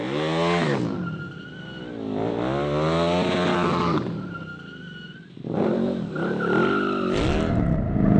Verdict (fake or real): real